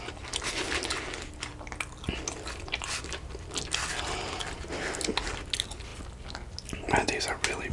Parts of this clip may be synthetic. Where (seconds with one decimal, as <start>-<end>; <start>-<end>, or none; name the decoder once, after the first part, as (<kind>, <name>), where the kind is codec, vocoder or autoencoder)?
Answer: none

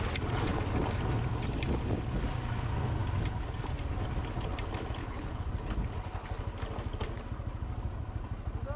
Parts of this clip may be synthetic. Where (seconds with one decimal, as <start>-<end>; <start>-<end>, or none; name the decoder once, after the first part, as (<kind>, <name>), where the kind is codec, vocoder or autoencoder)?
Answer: 5.0-5.5 (codec, HILCodec)

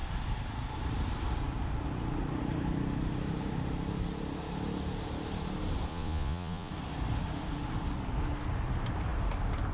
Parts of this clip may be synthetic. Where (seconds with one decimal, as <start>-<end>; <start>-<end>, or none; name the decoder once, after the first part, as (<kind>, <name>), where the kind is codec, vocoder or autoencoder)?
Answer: 5.9-6.7 (vocoder, Vocos)

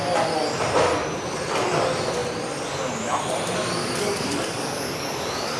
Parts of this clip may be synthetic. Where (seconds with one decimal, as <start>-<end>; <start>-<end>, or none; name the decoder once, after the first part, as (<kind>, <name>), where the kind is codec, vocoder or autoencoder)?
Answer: 3.8-5.6 (codec, DAC)

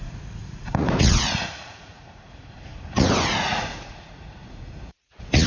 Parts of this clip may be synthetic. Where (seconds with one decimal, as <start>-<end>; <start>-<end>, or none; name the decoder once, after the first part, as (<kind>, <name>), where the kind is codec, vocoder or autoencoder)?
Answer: 0.0-5.5 (vocoder, Vocos)

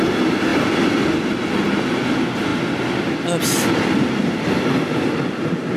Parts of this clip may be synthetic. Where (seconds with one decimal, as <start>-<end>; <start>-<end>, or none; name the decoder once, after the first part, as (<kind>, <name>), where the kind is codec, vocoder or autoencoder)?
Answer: none

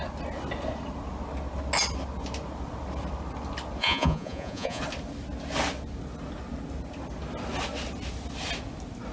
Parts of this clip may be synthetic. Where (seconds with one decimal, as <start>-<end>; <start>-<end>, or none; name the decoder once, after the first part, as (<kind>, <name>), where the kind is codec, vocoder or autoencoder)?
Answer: 3.8-4.8 (vocoder, Vocos)

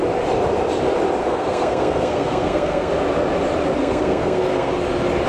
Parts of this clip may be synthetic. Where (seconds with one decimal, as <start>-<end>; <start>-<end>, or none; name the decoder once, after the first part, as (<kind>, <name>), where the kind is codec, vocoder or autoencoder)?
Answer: 1.2-2.9 (codec, SNAC); 3.8-4.7